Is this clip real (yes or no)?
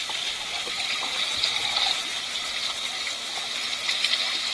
yes